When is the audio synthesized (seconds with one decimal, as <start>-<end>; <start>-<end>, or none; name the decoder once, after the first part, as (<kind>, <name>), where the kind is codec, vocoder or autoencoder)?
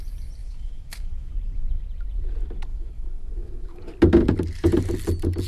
0.4-1.3 (autoencoder, DAC-VAE); 2.7-3.8